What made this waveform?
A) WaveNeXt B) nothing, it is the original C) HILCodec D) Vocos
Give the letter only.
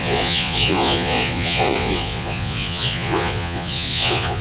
D